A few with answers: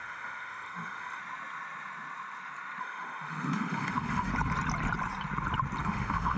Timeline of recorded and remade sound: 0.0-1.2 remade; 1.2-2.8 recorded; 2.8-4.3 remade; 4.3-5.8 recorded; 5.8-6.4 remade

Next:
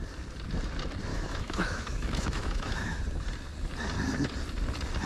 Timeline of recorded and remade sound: 0.0-1.1 recorded; 1.1-3.0 remade; 3.0-5.1 recorded

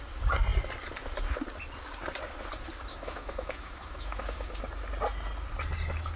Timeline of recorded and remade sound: 0.0-2.9 recorded; 2.9-4.6 remade; 4.6-6.2 recorded

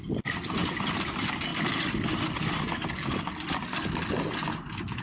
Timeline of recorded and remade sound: 0.0-5.0 recorded

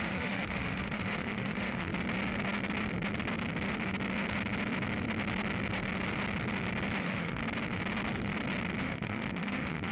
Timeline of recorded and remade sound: 0.0-1.9 remade; 1.9-7.0 recorded; 7.0-7.4 remade; 7.4-8.8 recorded; 8.8-9.9 remade

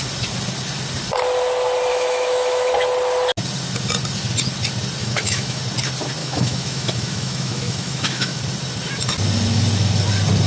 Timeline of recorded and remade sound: 0.0-1.9 recorded; 1.9-2.7 remade; 2.7-5.0 recorded; 5.0-5.6 remade; 5.6-6.2 recorded; 6.2-8.4 remade; 8.4-10.5 recorded

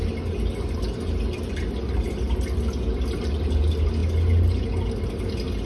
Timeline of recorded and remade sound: 0.0-5.6 recorded